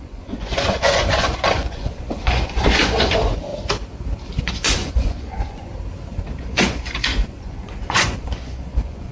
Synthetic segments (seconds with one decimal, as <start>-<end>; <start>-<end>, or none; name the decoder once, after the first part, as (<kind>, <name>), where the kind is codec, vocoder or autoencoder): 0.0-3.5 (vocoder, Vocos); 4.4-5.7; 6.4-9.1